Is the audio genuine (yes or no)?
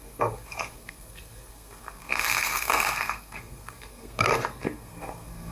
no